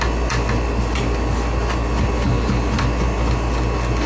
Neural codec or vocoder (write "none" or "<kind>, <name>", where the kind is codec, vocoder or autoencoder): none